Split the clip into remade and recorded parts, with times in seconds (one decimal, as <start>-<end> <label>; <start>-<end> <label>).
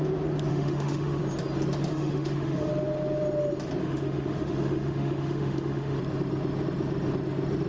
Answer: 0.0-0.5 recorded; 0.5-1.2 remade; 1.2-1.9 recorded; 1.9-2.7 remade; 2.7-3.8 recorded; 3.8-6.0 remade; 6.0-7.7 recorded